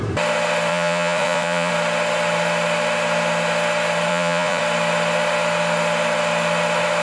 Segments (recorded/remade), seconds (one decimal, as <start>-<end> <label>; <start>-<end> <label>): 0.0-0.7 recorded; 0.7-1.7 remade; 1.7-4.1 recorded; 4.1-4.6 remade; 4.6-7.0 recorded